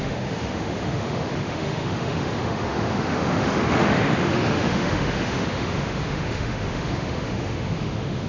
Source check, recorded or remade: remade